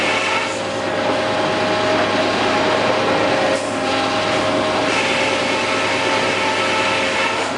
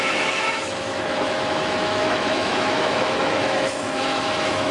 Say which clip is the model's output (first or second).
second